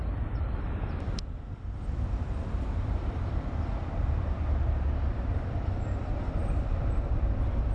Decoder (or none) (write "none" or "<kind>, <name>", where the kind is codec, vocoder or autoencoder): vocoder, BigVGAN v2